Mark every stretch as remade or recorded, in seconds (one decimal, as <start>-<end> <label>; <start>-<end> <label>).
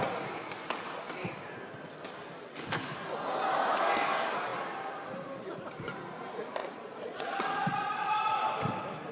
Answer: 0.0-6.6 recorded; 6.6-8.2 remade; 8.2-9.1 recorded